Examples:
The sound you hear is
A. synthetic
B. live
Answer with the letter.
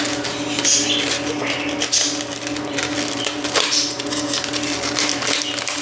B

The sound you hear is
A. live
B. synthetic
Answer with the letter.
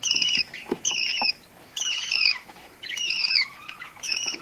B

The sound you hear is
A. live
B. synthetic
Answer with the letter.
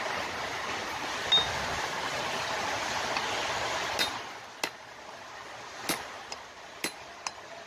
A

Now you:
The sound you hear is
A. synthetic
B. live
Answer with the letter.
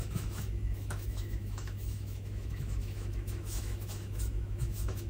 A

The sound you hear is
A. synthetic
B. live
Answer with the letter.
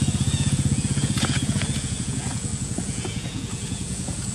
A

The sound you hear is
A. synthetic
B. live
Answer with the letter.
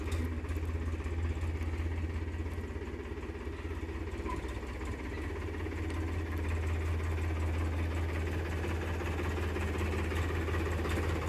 B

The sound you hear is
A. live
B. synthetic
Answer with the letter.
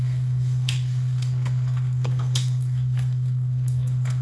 B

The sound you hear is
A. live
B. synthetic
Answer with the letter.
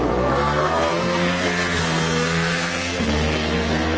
B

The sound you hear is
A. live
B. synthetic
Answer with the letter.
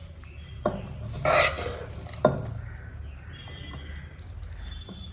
A